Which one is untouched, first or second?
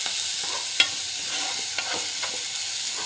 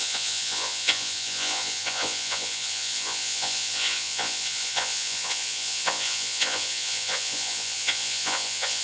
first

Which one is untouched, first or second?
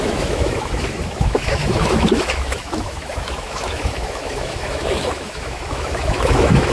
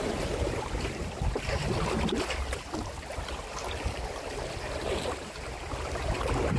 second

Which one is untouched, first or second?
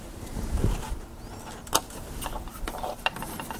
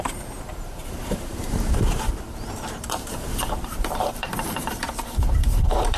first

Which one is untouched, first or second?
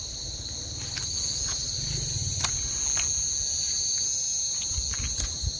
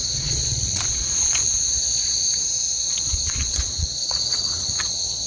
first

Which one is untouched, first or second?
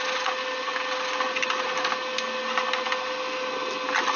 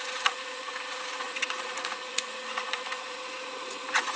first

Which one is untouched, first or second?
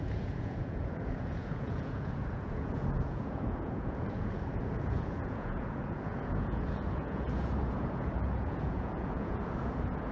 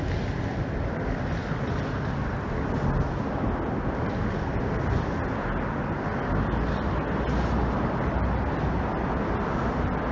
second